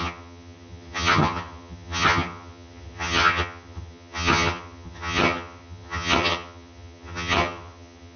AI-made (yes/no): yes